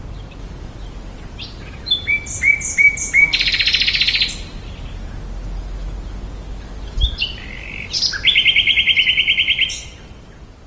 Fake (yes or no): no